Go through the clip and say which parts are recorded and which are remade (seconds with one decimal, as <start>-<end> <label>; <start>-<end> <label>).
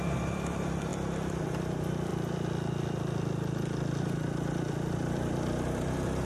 0.0-0.9 remade; 0.9-1.4 recorded; 1.4-2.1 remade; 2.1-4.0 recorded; 4.0-6.2 remade